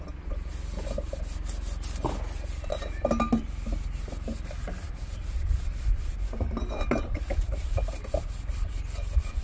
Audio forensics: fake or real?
real